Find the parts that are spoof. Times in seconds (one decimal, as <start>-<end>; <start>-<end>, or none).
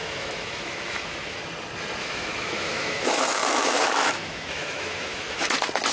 0.0-1.4; 2.0-5.5